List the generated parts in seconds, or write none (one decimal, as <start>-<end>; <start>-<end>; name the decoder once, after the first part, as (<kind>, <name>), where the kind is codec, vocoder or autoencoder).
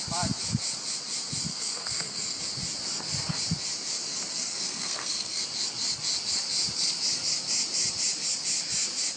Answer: 1.5-2.4 (codec, SNAC); 4.3-5.4